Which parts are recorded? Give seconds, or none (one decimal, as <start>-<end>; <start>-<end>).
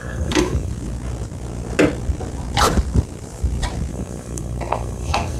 0.7-3.9